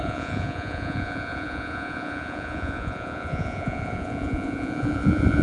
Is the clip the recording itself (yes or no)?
no